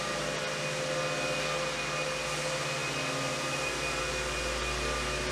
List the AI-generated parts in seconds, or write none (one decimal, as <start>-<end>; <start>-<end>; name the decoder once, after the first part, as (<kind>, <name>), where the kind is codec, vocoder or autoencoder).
none

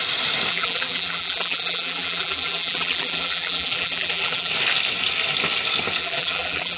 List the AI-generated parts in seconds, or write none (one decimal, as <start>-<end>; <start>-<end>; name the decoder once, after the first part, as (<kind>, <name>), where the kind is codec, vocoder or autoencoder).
0.5-4.5 (vocoder, BigVGAN v2); 6.0-6.8

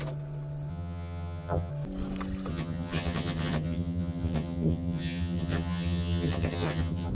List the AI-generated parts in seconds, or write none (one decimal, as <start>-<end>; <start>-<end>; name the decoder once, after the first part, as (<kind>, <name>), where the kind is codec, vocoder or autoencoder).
0.7-1.7 (vocoder, HiFi-GAN); 2.5-7.1

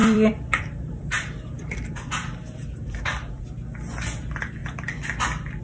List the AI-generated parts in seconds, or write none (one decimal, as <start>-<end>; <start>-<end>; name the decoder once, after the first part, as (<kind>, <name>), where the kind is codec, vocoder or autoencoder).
0.0-3.4 (vocoder, BigVGAN v2)